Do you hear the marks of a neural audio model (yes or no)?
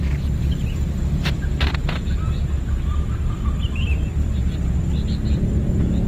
no